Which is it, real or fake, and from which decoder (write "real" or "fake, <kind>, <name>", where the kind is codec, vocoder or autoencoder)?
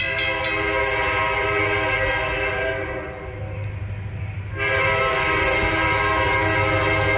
real